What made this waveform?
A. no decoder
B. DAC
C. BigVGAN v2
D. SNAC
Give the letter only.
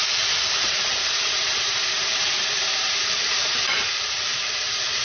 C